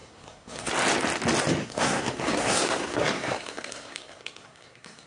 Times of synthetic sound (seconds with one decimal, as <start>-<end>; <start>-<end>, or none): 0.0-0.7; 1.6-5.1